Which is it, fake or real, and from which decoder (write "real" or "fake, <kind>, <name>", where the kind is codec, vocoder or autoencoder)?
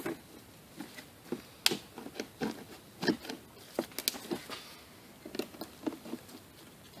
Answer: real